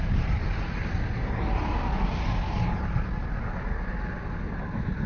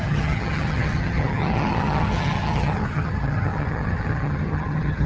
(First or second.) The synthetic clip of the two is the second